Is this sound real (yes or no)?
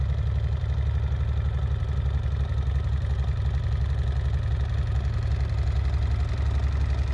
yes